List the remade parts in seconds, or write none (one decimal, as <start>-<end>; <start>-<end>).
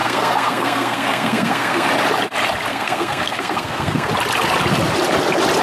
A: 0.0-1.9; 2.7-4.1